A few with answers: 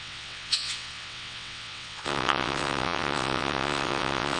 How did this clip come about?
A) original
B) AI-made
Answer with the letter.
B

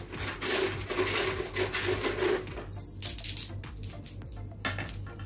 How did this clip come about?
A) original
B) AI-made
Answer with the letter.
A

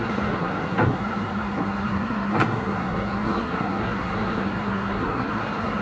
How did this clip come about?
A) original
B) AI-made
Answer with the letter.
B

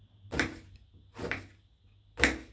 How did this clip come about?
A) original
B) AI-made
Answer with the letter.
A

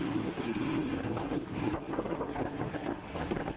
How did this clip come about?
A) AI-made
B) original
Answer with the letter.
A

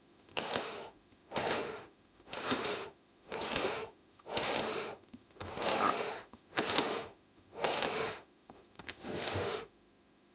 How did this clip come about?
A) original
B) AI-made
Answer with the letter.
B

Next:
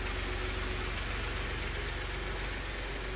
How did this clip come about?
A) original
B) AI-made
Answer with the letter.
A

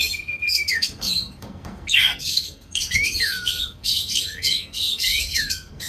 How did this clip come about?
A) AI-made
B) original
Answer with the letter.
A